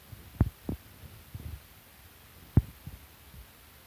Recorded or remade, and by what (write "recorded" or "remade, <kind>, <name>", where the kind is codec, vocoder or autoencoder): recorded